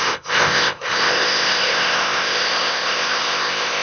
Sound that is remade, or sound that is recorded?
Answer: remade